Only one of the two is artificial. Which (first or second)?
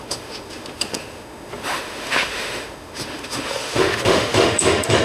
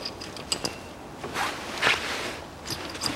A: first